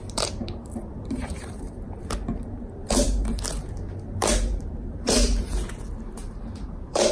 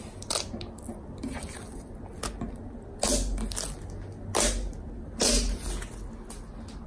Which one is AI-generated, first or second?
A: first